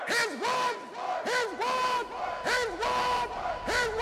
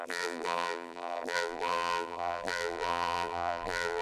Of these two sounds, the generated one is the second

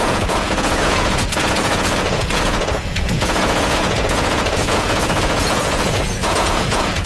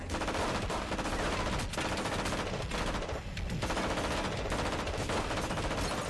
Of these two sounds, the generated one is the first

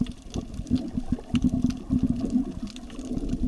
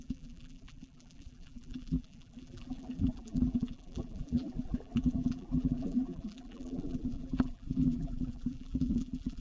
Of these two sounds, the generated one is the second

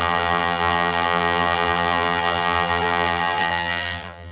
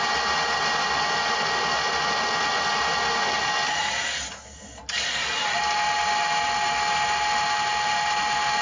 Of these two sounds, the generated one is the first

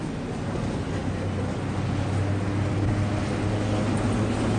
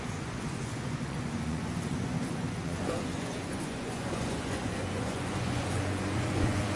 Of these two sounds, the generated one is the second